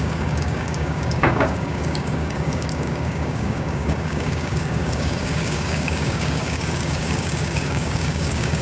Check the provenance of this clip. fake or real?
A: fake